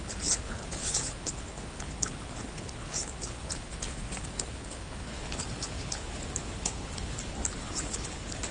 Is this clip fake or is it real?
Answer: fake